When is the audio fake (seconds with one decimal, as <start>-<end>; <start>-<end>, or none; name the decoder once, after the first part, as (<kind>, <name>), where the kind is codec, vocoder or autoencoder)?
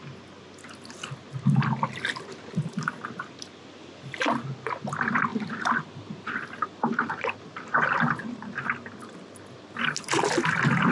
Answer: none